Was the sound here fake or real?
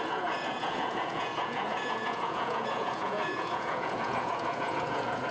fake